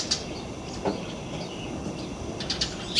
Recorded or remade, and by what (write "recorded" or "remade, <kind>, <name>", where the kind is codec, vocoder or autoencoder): recorded